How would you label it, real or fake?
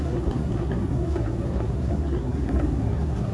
fake